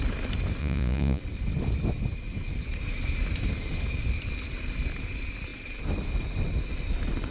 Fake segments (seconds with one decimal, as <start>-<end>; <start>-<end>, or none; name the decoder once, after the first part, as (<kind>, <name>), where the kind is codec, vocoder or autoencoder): 0.6-1.2 (vocoder, Vocos)